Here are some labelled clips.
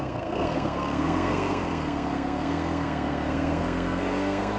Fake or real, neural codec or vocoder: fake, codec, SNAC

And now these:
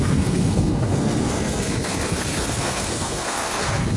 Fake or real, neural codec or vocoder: fake, codec, SNAC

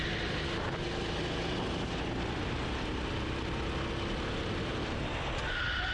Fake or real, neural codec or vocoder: real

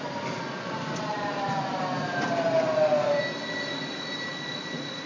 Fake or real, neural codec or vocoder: real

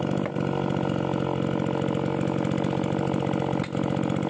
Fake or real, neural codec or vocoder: real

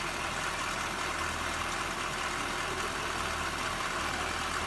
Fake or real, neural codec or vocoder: real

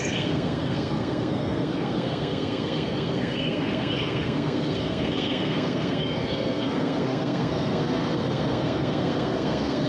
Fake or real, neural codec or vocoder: fake, codec, SNAC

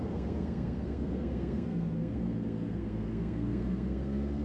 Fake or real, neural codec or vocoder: fake, codec, SNAC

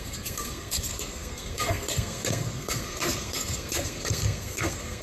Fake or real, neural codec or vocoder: fake, codec, SNAC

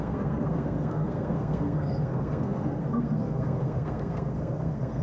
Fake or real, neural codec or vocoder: fake, codec, SNAC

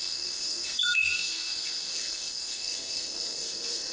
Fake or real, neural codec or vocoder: fake, codec, SNAC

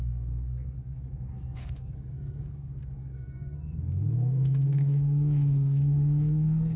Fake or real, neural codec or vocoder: fake, codec, SNAC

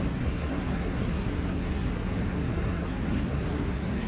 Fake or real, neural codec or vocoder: fake, codec, SNAC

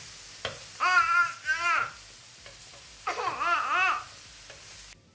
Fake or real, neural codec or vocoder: real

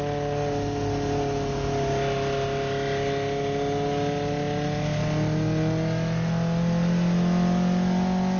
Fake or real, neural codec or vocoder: real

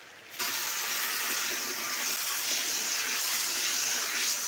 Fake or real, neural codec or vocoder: real